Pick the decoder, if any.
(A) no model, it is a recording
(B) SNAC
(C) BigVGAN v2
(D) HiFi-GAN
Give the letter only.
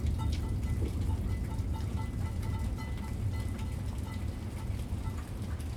A